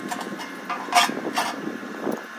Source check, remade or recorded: recorded